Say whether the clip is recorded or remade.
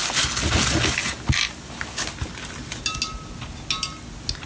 recorded